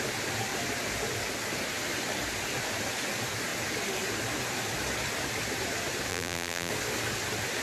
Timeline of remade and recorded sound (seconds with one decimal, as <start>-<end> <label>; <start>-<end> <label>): 0.0-6.1 recorded; 6.1-6.7 remade; 6.7-7.6 recorded